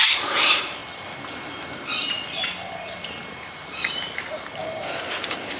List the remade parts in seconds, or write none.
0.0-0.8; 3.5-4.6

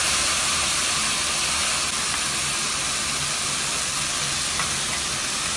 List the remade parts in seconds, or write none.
0.0-0.8

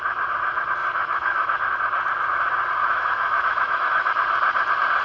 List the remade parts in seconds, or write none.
0.8-1.7; 2.8-4.1

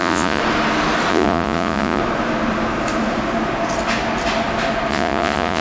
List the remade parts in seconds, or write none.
0.0-0.4; 1.1-2.0; 4.9-5.6